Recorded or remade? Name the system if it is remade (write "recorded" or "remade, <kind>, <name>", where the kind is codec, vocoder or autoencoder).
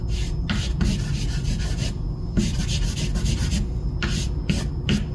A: recorded